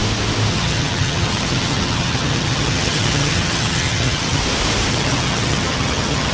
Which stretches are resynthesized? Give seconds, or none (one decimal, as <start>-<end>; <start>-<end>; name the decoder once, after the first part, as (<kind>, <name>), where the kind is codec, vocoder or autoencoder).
0.5-4.4 (vocoder, HiFi-GAN); 4.9-6.3